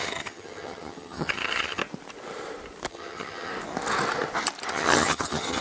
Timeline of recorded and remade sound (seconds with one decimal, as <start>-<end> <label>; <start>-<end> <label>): 0.0-1.8 remade; 1.8-2.9 recorded; 2.9-3.5 remade; 3.5-4.7 recorded; 4.7-5.6 remade